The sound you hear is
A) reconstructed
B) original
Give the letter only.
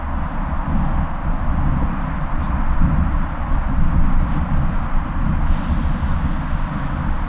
B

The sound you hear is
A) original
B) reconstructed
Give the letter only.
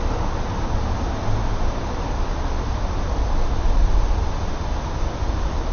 A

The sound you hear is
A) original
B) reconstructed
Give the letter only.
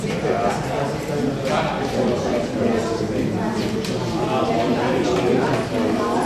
A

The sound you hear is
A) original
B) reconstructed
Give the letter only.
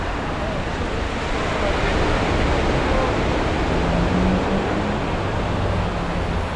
A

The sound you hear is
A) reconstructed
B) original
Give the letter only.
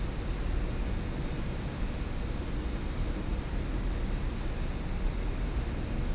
B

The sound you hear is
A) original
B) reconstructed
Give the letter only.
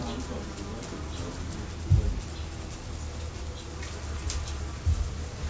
A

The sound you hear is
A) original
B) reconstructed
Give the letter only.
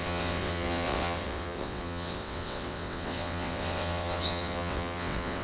B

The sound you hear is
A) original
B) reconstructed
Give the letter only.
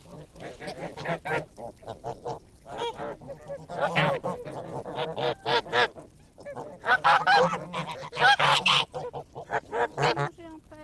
A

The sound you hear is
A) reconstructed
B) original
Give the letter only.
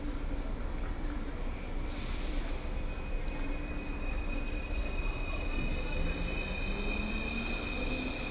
B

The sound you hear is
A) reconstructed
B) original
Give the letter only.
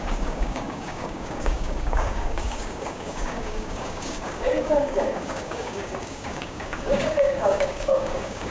A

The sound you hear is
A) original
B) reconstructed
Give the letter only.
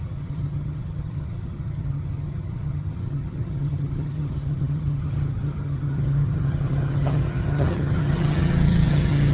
B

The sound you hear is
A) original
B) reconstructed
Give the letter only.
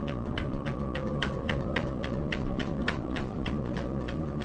B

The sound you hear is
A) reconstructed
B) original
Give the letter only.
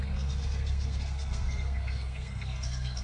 A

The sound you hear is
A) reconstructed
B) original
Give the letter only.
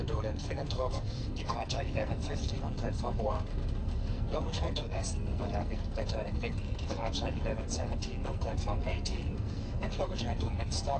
A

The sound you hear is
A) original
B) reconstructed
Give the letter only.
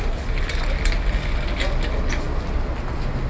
A